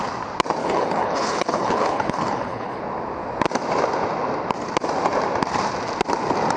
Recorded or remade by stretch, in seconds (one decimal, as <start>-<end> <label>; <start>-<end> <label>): 0.0-0.6 recorded; 0.6-2.8 remade; 2.8-6.6 recorded